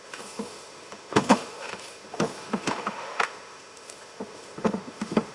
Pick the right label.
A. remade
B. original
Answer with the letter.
A